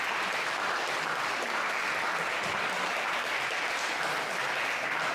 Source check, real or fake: real